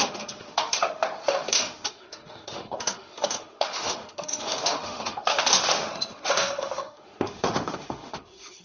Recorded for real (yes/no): no